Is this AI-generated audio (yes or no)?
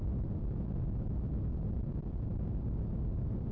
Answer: no